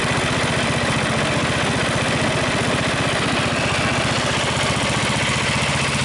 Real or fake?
real